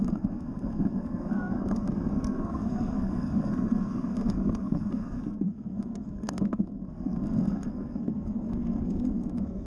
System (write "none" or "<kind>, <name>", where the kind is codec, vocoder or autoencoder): codec, SNAC